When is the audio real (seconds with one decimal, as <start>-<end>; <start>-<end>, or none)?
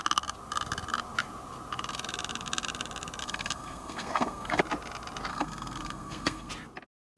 0.0-3.2; 4.6-5.3; 6.5-7.2